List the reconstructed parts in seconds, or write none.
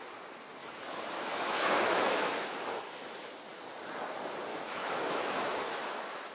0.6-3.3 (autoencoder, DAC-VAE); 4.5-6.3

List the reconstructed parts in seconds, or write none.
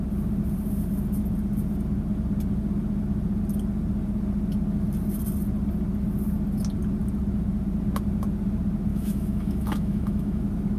8.9-10.4 (autoencoder, DAC-VAE)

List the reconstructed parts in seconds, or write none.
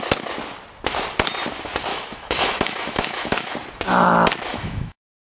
1.9-3.5 (autoencoder, DAC-VAE); 4.5-5.3